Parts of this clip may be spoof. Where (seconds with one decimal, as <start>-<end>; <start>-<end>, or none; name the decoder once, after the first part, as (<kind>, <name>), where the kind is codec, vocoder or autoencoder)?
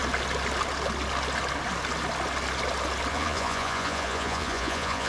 3.1-5.1 (vocoder, Vocos)